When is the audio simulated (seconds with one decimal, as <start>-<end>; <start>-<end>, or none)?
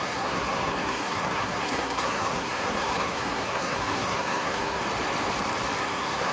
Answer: 0.0-4.8; 5.8-6.3